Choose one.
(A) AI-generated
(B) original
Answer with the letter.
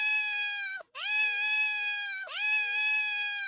A